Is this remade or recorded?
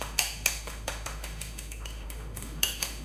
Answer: remade